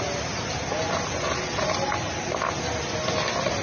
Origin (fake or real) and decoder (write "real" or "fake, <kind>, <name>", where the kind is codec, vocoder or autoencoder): real